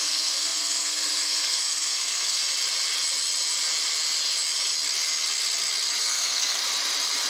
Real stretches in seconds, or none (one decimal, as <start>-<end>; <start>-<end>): 2.4-6.0; 6.6-7.3